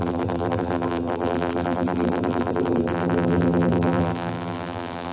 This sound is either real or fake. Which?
fake